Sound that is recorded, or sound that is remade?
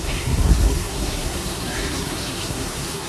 remade